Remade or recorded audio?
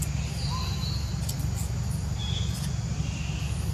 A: recorded